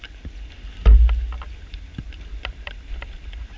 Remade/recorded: recorded